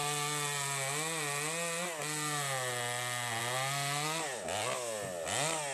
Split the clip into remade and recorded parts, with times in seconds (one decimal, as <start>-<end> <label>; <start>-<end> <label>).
0.0-5.7 recorded